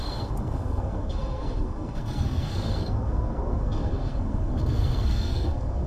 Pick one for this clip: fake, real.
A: fake